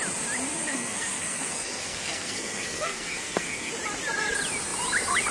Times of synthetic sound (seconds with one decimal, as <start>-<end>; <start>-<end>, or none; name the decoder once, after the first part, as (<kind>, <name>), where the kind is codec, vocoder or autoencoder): 0.5-3.7 (codec, SNAC)